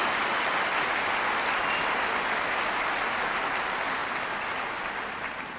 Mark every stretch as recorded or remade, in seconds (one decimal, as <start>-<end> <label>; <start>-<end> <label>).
0.0-5.6 recorded